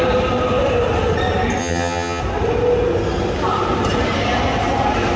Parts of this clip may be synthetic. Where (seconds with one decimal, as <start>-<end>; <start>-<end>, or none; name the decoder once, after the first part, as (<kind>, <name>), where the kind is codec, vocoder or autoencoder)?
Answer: 1.6-2.2 (vocoder, HiFi-GAN)